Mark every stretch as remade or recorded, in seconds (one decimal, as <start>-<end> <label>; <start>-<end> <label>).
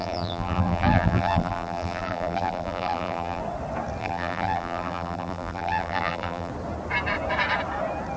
0.0-3.4 remade; 3.4-4.0 recorded; 4.0-6.5 remade; 6.5-8.2 recorded